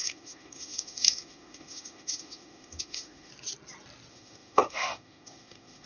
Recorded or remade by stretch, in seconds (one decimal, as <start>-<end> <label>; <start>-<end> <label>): 0.0-3.3 remade; 3.3-4.1 recorded; 4.1-5.9 remade